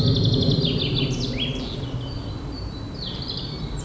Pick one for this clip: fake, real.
real